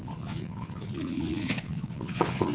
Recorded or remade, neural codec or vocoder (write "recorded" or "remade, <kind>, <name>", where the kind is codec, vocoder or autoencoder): remade, vocoder, Vocos